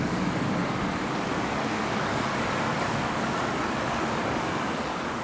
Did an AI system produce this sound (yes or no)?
yes